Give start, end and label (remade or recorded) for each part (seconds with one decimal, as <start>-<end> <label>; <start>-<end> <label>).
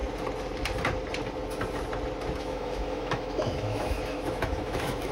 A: 0.0-2.4 recorded; 2.4-5.1 remade